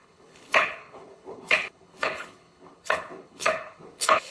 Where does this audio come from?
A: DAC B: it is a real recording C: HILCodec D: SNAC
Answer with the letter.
C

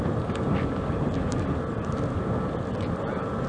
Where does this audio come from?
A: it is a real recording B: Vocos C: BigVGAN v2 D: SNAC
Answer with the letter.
A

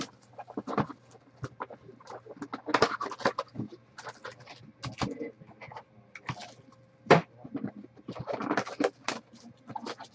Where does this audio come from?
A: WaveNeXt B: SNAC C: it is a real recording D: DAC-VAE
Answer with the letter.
C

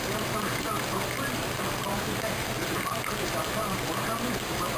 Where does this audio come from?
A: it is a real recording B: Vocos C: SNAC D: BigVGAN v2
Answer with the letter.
A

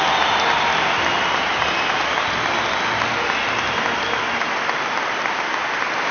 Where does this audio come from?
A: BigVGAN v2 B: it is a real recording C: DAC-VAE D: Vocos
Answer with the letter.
B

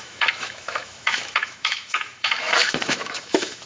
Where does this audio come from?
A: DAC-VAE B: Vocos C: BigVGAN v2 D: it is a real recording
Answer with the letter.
A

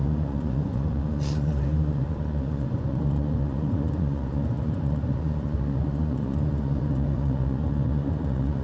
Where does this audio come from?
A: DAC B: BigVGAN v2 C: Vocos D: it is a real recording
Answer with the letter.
C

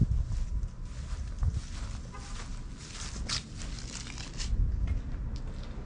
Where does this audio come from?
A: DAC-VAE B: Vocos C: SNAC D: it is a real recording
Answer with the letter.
D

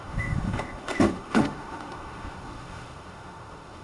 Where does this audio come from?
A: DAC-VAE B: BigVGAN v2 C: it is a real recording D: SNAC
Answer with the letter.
A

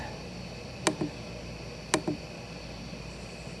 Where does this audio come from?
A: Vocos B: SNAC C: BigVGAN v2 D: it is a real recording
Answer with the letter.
D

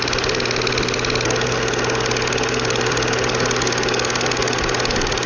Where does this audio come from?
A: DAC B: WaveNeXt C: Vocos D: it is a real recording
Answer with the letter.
D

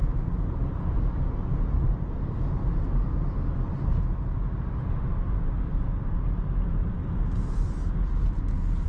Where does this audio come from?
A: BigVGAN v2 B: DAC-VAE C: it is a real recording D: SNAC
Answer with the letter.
C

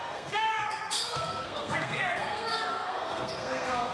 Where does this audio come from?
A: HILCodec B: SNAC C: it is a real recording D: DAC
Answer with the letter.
B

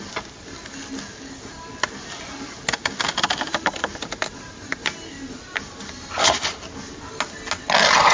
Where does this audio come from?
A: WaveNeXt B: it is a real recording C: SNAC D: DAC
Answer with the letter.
B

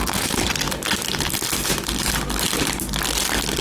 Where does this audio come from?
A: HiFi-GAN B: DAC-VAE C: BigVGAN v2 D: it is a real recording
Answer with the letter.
D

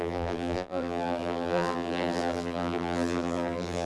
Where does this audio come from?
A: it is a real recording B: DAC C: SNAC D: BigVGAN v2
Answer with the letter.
D